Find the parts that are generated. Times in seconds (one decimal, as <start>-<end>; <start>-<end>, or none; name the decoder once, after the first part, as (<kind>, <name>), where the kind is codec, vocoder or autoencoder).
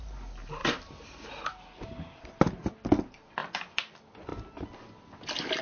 0.6-2.3 (vocoder, BigVGAN v2)